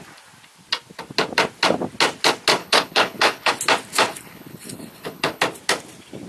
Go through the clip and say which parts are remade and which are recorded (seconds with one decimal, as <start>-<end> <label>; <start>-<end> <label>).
0.0-2.6 recorded; 2.6-3.5 remade; 3.5-4.1 recorded; 4.1-5.4 remade; 5.4-6.3 recorded